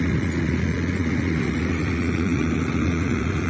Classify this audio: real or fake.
fake